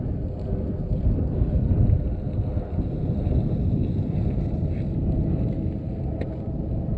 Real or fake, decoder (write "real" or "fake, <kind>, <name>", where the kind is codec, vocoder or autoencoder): real